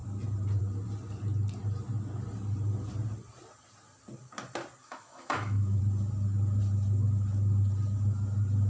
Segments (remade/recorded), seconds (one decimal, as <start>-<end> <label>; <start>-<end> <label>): 0.0-4.8 recorded; 4.8-5.8 remade; 5.8-8.7 recorded